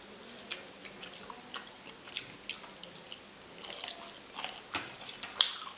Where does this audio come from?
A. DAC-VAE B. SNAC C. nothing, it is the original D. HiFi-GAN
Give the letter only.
C